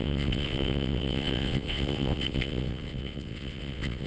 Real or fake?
fake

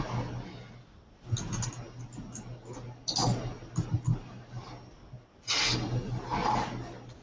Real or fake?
real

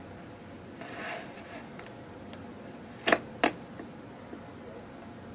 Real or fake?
real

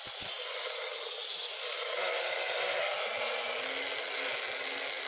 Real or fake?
real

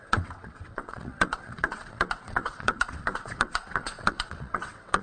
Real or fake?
fake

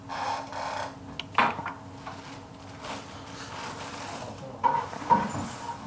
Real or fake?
real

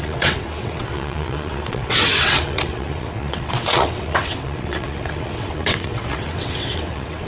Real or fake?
fake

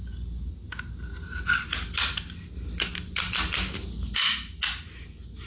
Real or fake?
real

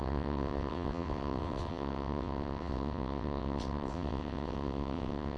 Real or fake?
fake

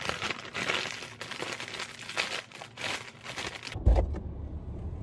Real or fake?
real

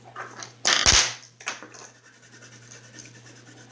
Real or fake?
real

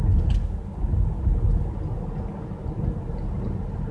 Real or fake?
real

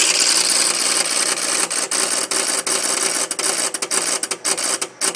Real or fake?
real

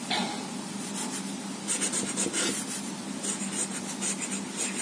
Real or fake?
real